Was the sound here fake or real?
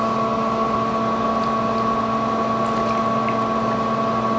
real